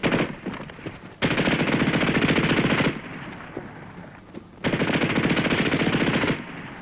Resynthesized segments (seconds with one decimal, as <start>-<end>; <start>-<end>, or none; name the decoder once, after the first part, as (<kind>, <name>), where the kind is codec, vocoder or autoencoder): 0.0-1.7 (vocoder, BigVGAN v2); 3.6-4.2